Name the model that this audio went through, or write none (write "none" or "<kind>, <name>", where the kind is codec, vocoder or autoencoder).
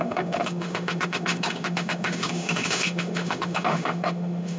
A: autoencoder, DAC-VAE